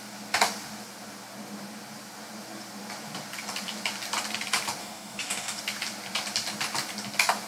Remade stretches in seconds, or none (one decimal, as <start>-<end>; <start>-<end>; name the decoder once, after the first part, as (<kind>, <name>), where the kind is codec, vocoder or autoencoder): 4.8-5.6 (codec, DAC)